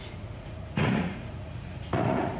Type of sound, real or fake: fake